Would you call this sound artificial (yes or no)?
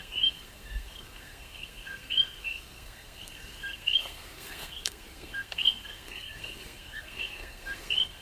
yes